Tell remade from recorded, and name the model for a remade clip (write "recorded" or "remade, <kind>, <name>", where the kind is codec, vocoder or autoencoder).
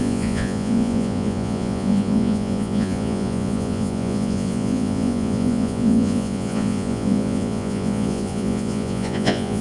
remade, vocoder, Vocos